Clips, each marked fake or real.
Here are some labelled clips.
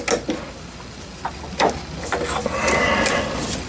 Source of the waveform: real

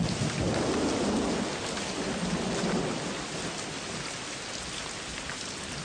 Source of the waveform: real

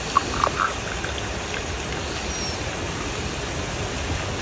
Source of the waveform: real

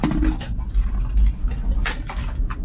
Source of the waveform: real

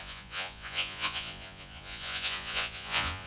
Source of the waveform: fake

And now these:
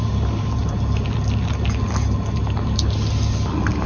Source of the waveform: real